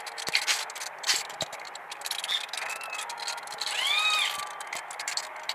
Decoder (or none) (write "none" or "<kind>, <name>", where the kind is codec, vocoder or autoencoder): none